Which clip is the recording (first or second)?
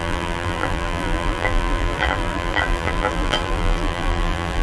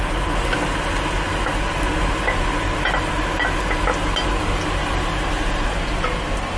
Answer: second